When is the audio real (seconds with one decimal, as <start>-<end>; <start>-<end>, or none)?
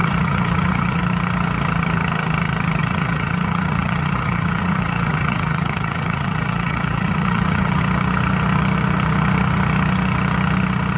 1.0-2.8; 7.8-11.0